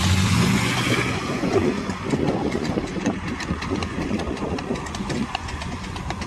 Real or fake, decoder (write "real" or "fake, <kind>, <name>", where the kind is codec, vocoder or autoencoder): fake, vocoder, Vocos